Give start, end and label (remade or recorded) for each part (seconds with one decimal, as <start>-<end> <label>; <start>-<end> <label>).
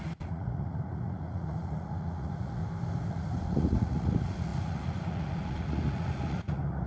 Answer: 0.0-2.6 remade; 2.6-3.1 recorded; 3.1-6.9 remade